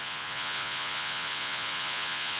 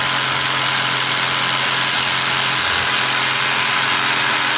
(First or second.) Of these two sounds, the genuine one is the second